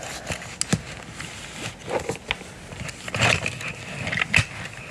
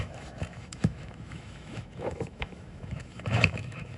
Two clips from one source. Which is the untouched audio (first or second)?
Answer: first